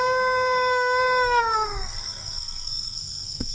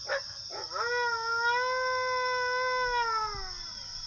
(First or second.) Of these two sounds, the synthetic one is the first